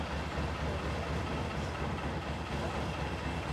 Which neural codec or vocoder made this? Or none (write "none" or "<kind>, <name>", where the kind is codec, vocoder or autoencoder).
none